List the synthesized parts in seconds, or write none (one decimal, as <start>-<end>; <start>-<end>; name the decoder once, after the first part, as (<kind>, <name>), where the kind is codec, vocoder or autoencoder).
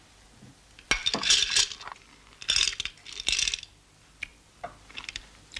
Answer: none